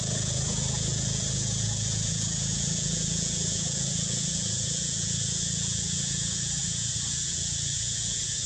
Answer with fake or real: fake